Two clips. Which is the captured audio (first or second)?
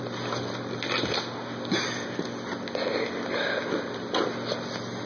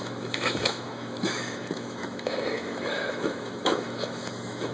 first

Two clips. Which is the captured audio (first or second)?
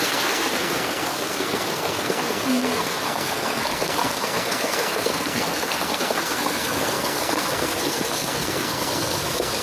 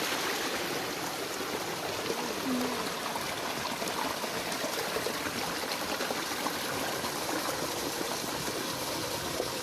second